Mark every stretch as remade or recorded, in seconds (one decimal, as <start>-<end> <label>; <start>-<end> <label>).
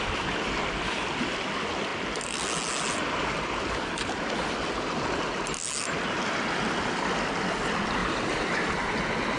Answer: 0.0-8.0 recorded; 8.0-8.7 remade; 8.7-9.4 recorded